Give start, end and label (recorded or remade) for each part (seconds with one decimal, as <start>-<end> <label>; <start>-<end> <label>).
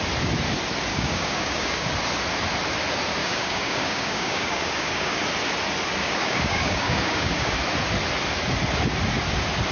0.0-0.9 recorded; 0.9-1.9 remade; 1.9-3.2 recorded; 3.2-5.2 remade; 5.2-6.0 recorded; 6.0-7.5 remade; 7.5-9.7 recorded